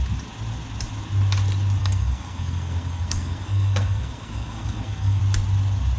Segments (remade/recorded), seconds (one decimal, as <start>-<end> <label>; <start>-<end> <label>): 0.0-1.8 recorded; 1.8-5.2 remade; 5.2-6.0 recorded